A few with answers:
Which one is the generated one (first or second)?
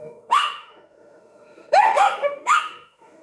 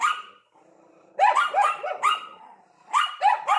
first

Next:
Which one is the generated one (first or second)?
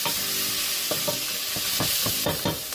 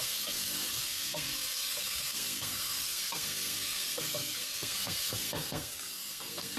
second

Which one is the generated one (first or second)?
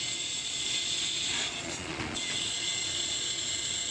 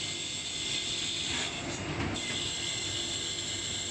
first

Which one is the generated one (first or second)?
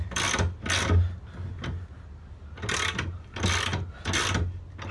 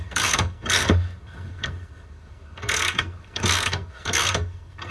second